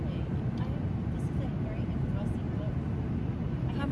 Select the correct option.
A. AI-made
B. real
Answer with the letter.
B